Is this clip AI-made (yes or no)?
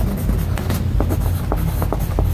no